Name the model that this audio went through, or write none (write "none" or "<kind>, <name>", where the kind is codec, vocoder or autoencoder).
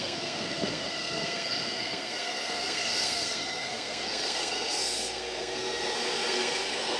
codec, SNAC